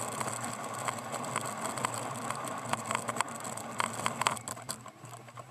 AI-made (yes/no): no